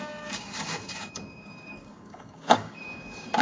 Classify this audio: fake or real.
fake